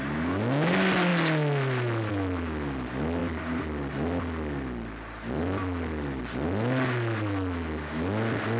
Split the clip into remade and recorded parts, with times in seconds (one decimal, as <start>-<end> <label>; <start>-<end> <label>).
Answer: 0.0-8.6 recorded